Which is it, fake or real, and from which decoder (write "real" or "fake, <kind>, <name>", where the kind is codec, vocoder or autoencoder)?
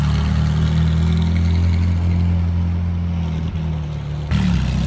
real